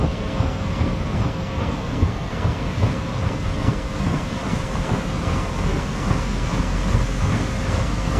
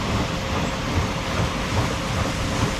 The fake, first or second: first